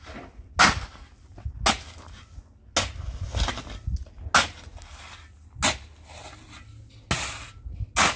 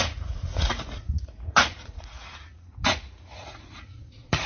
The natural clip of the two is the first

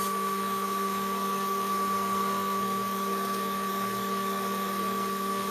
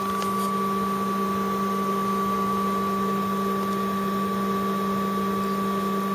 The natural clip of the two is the second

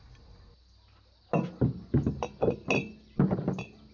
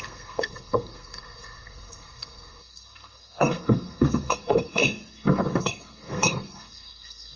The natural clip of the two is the first